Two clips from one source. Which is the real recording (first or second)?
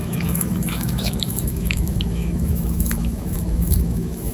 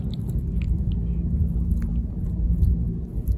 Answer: second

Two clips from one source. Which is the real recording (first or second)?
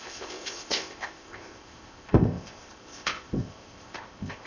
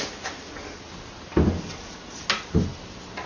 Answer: second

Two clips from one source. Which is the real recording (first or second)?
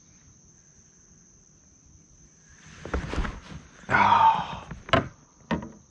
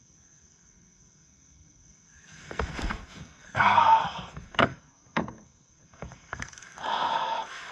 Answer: first